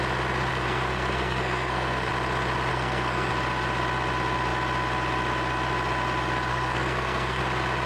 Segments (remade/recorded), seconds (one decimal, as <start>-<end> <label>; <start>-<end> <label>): 0.0-0.5 recorded; 0.5-2.1 remade; 2.1-2.7 recorded; 2.7-3.3 remade; 3.3-6.5 recorded; 6.5-7.4 remade; 7.4-7.9 recorded